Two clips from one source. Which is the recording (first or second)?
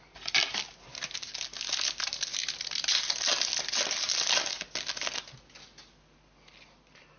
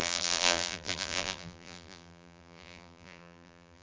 first